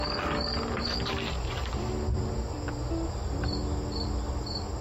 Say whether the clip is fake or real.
real